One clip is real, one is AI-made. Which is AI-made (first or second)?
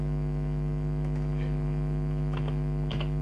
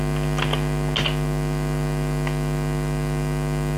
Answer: first